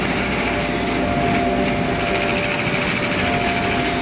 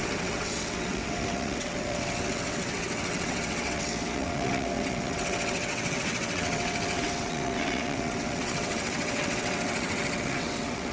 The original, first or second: first